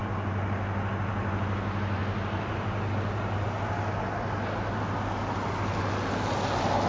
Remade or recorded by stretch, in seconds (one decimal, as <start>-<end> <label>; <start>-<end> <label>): 0.0-6.9 recorded